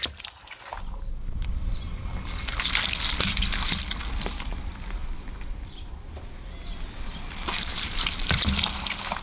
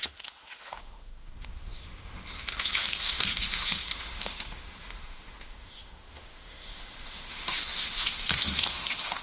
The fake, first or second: second